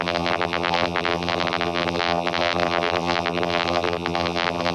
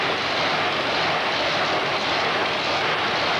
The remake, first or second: first